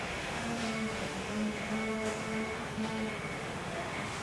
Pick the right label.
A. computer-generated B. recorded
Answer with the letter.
A